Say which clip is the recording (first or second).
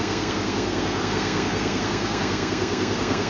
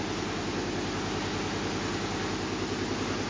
second